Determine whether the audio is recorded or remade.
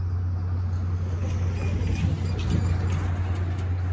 recorded